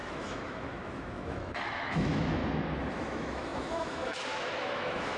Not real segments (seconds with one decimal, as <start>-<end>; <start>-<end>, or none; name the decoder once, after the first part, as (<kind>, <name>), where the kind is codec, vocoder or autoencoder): 0.0-2.4 (autoencoder, DAC-VAE); 2.9-5.2